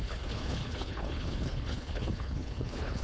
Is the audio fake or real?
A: fake